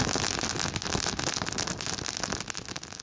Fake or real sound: real